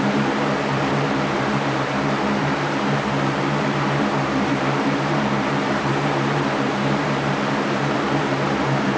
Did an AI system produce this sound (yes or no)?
yes